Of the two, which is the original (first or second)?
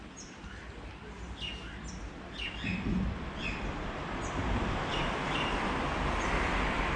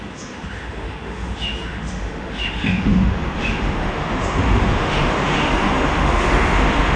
first